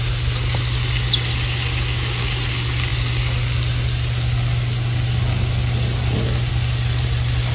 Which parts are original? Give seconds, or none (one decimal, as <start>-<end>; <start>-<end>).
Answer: 0.0-7.5